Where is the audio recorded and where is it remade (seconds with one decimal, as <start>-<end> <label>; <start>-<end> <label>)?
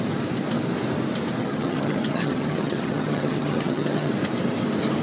0.0-1.4 recorded; 1.4-4.1 remade; 4.1-5.0 recorded